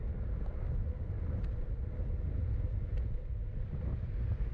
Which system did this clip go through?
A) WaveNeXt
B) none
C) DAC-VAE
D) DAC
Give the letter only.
B